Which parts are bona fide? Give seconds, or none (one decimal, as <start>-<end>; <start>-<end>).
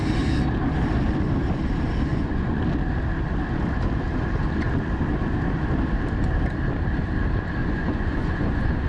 0.0-2.1; 2.6-7.6